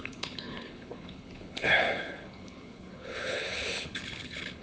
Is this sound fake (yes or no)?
yes